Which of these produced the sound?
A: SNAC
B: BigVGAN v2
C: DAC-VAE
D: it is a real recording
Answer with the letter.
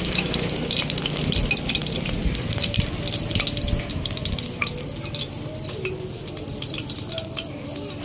D